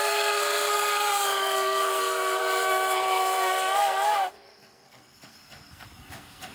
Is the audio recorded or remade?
remade